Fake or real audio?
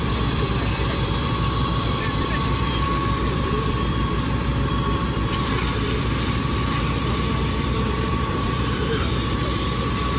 fake